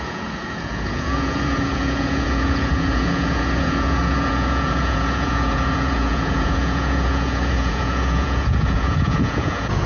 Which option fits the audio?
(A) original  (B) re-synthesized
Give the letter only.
B